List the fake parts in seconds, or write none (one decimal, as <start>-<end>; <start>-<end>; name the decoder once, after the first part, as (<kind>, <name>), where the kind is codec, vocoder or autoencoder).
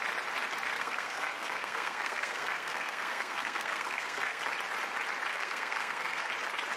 0.7-4.4 (codec, SNAC); 5.3-6.3